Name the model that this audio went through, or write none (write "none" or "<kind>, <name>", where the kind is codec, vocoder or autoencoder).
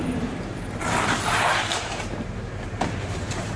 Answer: vocoder, BigVGAN v2